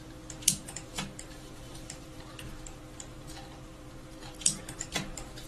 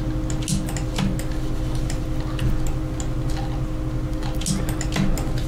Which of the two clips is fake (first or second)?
first